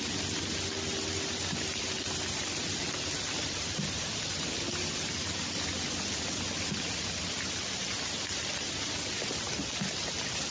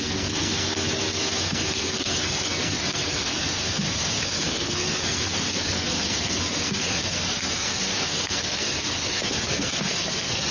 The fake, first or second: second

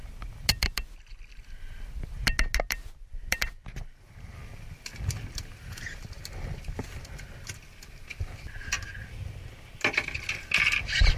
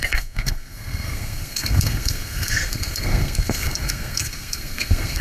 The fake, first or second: second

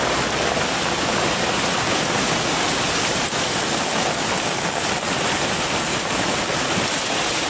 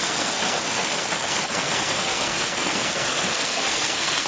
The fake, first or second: second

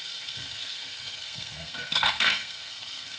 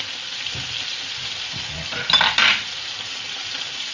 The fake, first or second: first